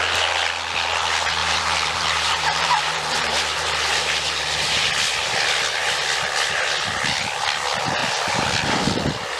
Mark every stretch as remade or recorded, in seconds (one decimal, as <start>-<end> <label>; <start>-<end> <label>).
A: 0.0-1.4 recorded; 1.4-4.9 remade; 4.9-9.4 recorded